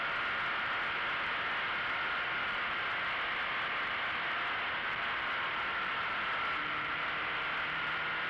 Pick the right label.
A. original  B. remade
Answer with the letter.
A